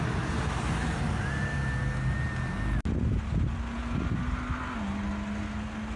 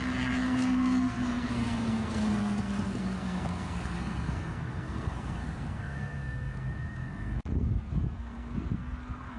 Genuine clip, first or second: first